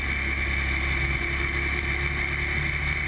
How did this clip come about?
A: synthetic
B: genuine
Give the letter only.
B